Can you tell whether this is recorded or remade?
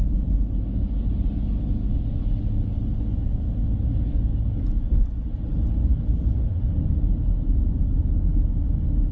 recorded